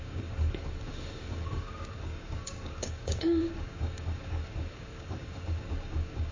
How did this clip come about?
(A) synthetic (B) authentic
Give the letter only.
A